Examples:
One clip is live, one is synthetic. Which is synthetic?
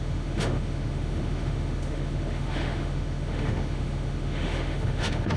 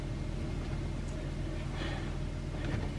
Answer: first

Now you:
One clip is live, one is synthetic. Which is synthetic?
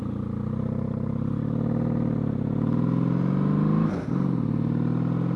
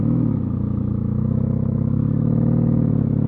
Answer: second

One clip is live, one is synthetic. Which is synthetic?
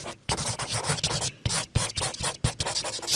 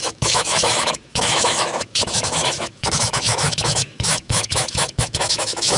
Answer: second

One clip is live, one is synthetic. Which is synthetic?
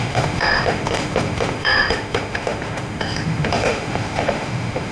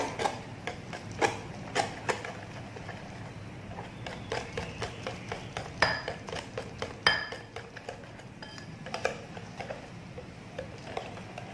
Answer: first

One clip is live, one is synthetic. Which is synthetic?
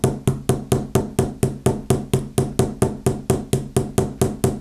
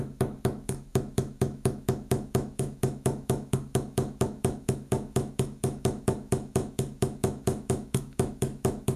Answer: second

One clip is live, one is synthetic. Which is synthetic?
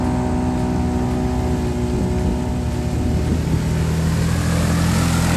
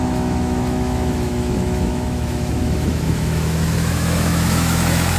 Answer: second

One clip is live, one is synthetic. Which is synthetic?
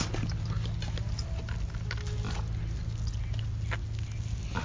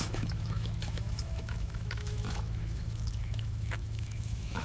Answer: second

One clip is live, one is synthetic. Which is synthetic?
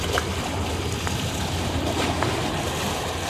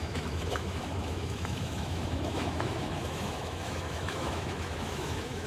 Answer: second